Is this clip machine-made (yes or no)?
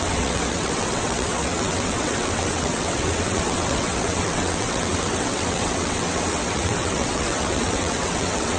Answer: yes